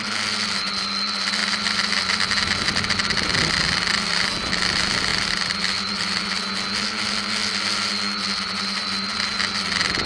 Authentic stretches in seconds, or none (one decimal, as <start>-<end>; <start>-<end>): 0.0-1.4; 2.3-5.1; 5.9-10.1